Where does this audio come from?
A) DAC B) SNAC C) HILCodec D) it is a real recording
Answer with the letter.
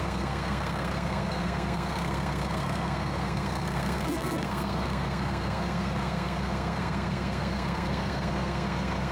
B